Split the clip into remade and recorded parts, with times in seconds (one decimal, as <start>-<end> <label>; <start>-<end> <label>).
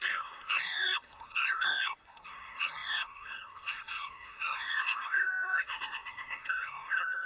0.0-7.3 remade